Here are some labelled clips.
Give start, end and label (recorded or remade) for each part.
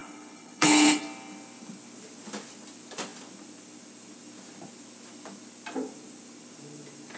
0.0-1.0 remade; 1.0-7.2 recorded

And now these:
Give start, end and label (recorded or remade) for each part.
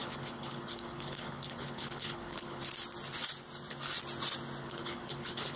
0.0-2.6 remade; 2.6-4.6 recorded; 4.6-5.6 remade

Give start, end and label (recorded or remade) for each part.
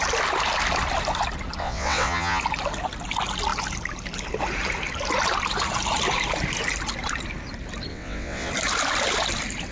0.0-1.6 recorded; 1.6-2.4 remade; 2.4-7.9 recorded; 7.9-8.5 remade; 8.5-9.7 recorded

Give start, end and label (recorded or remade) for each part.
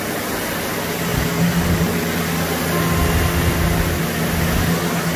0.0-5.2 recorded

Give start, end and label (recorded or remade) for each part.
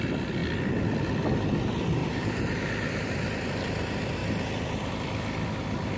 0.0-2.0 recorded; 2.0-3.1 remade; 3.1-6.0 recorded